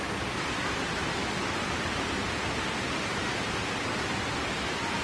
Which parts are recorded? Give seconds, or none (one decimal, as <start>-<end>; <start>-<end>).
0.0-5.0